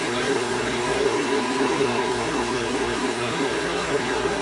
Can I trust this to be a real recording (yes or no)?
no